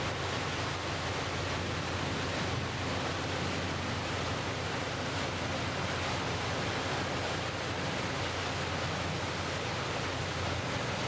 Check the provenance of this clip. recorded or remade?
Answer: recorded